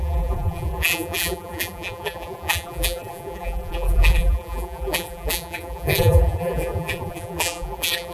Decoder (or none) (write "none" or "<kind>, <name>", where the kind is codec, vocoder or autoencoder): vocoder, BigVGAN v2